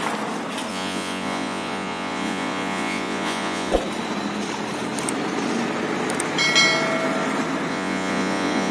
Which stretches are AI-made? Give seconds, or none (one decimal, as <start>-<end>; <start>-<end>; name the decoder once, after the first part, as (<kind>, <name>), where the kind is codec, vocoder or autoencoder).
0.7-3.7 (vocoder, Vocos); 7.7-8.7